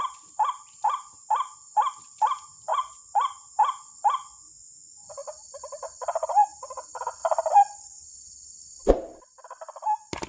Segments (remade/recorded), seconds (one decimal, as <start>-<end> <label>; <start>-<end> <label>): 0.0-5.2 recorded; 5.2-6.5 remade; 6.5-7.2 recorded; 7.2-8.9 remade; 8.9-10.3 recorded